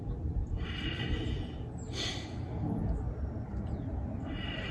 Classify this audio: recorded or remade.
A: recorded